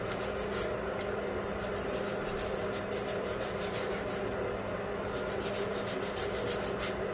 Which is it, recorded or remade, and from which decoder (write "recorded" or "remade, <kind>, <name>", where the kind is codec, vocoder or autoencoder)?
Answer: recorded